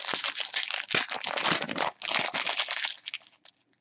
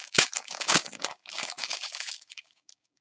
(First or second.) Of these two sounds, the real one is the first